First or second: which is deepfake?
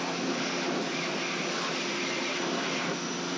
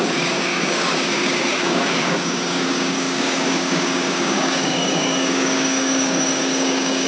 second